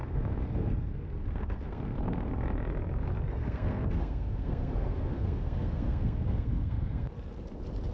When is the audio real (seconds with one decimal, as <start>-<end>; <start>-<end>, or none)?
2.3-3.3; 7.1-7.9